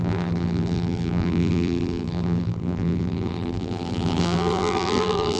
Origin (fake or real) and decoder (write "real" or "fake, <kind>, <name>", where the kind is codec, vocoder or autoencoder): fake, vocoder, BigVGAN v2